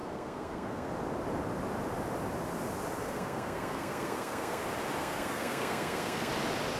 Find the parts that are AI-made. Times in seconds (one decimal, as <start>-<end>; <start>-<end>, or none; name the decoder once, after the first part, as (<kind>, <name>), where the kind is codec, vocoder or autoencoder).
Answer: 0.0-0.9 (codec, SNAC); 3.0-4.6; 5.0-6.3